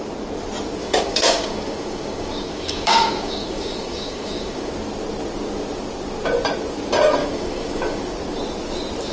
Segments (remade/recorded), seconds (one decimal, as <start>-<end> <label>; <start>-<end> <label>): 0.0-0.8 recorded; 0.8-4.7 remade; 4.7-7.2 recorded; 7.2-8.0 remade; 8.0-9.1 recorded

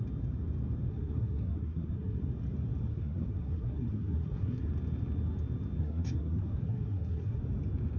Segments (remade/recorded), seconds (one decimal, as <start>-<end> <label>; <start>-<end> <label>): 0.0-0.9 recorded; 0.9-2.2 remade; 2.2-2.9 recorded; 2.9-4.7 remade; 4.7-5.8 recorded; 5.8-7.4 remade; 7.4-8.0 recorded

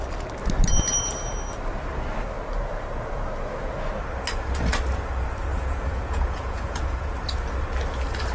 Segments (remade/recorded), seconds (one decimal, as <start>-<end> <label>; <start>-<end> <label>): 0.0-5.5 recorded; 5.5-7.1 remade; 7.1-8.3 recorded

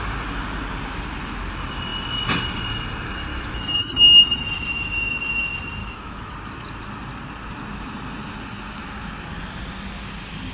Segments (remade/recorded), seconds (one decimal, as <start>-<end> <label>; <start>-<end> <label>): 0.0-3.3 recorded; 3.3-5.2 remade; 5.2-5.8 recorded; 5.8-6.3 remade; 6.3-10.5 recorded

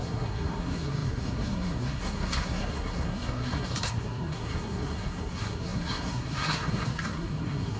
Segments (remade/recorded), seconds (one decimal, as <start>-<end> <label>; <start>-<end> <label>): 0.0-7.8 remade